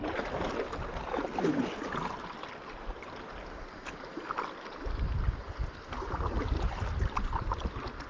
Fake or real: real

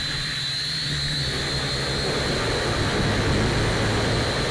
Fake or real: real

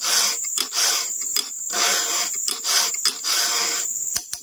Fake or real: real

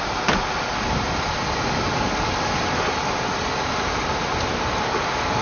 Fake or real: real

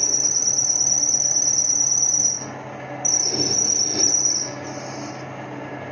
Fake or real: real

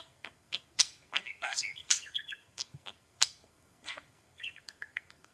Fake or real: fake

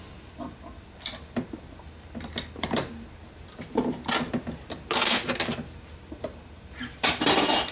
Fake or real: real